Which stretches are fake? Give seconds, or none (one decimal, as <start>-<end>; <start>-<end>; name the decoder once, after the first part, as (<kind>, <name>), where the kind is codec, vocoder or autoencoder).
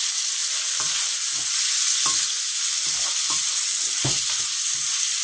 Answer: none